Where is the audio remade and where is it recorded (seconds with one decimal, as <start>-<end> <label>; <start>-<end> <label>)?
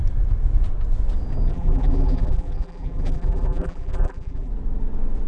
0.0-1.5 recorded; 1.5-4.5 remade; 4.5-5.3 recorded